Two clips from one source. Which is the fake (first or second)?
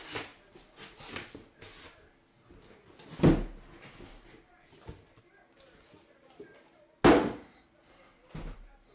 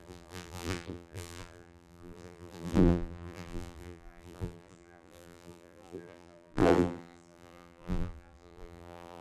second